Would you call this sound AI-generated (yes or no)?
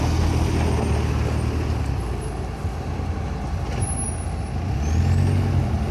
no